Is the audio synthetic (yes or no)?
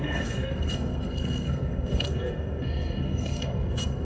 yes